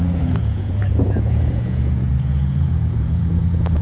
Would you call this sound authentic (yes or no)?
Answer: no